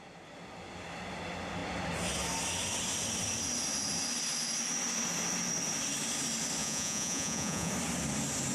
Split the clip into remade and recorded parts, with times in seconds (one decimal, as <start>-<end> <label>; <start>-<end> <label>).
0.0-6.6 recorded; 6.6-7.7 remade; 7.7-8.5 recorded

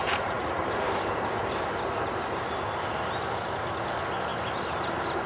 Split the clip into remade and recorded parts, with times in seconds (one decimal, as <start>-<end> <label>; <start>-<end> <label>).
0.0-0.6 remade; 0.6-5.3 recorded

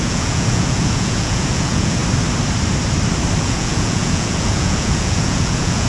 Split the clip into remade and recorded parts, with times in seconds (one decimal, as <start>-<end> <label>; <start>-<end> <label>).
0.0-2.0 remade; 2.0-3.4 recorded; 3.4-5.9 remade

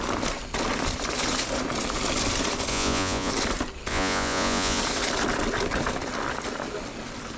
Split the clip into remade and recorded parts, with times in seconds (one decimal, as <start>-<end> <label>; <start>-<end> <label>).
0.0-2.7 recorded; 2.7-3.3 remade; 3.3-3.9 recorded; 3.9-4.8 remade; 4.8-7.4 recorded

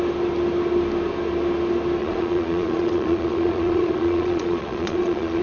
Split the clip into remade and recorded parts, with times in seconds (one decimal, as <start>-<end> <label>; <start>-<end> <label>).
0.0-2.0 recorded; 2.0-5.4 remade